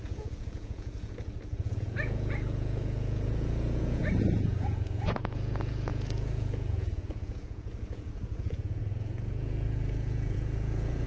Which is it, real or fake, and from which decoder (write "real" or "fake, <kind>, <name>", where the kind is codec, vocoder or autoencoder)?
fake, vocoder, Vocos